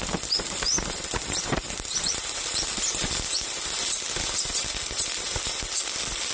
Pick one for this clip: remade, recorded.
recorded